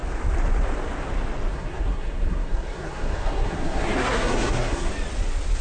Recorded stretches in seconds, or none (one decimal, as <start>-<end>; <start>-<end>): 0.0-1.5; 4.9-5.6